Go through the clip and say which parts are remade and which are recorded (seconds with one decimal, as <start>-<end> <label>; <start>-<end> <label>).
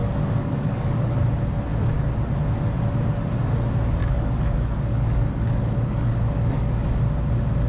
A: 0.0-1.2 remade; 1.2-4.0 recorded; 4.0-7.0 remade; 7.0-7.7 recorded